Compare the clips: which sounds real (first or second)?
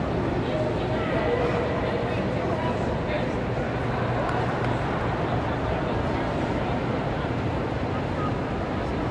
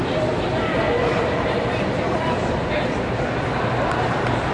first